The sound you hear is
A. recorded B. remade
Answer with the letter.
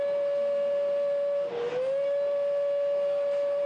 A